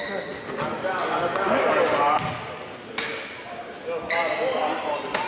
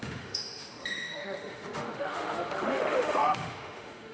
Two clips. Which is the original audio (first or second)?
first